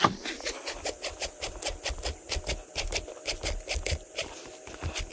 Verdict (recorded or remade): recorded